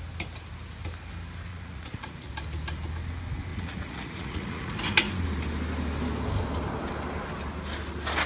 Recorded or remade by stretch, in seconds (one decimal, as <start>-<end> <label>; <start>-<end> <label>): 0.0-1.5 recorded; 1.5-2.3 remade; 2.3-3.5 recorded; 3.5-4.7 remade; 4.7-8.3 recorded